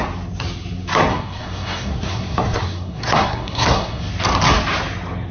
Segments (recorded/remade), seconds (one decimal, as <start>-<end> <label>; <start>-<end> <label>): 0.0-1.1 recorded; 1.1-4.1 remade; 4.1-5.3 recorded